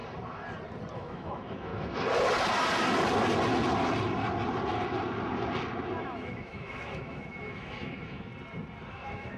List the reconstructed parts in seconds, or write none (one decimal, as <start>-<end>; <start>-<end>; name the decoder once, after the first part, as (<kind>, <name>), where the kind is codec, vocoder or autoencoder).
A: 0.9-1.7 (autoencoder, DAC-VAE); 6.0-8.3; 8.9-9.4